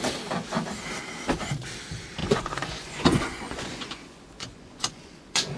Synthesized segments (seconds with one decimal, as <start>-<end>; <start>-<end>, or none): 2.2-5.6